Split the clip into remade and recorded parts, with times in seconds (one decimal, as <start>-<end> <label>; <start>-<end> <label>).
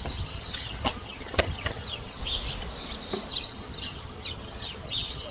0.0-2.2 remade; 2.2-3.3 recorded; 3.3-5.3 remade